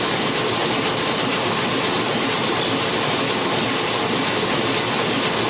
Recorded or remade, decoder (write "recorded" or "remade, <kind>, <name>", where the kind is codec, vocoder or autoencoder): recorded